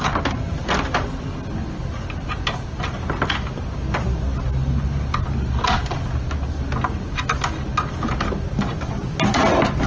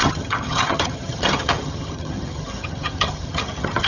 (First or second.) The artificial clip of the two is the second